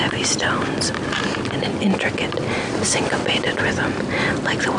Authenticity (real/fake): real